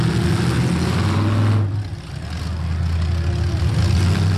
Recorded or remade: recorded